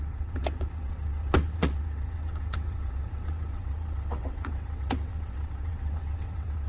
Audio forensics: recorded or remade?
remade